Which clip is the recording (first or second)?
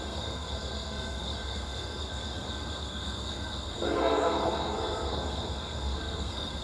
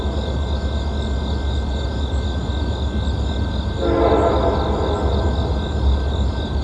second